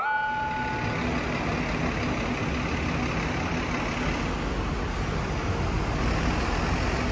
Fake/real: real